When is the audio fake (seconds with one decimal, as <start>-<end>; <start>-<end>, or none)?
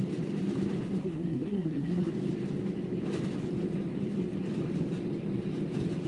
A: 1.0-2.1